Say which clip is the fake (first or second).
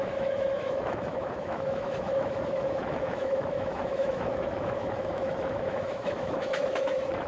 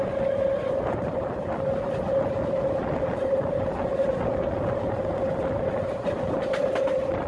first